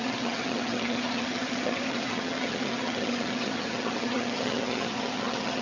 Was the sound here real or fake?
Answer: fake